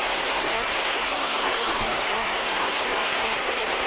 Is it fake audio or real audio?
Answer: fake